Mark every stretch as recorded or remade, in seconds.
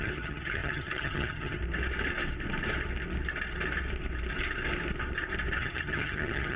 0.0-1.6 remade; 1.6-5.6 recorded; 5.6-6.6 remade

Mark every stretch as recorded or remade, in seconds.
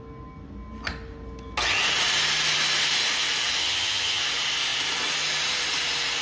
0.0-3.6 recorded; 3.6-4.2 remade; 4.2-6.2 recorded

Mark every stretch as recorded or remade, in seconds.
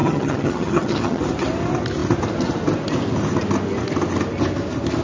0.0-1.2 remade; 1.2-5.0 recorded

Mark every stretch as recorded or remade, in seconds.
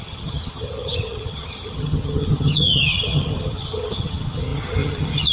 0.0-5.3 remade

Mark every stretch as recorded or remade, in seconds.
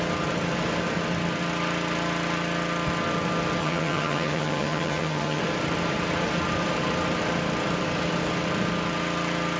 0.0-3.6 recorded; 3.6-5.4 remade; 5.4-9.6 recorded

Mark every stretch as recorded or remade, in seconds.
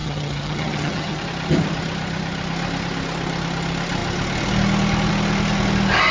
0.0-1.2 remade; 1.2-6.1 recorded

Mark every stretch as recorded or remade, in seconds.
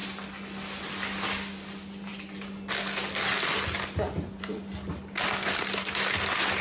0.0-6.6 recorded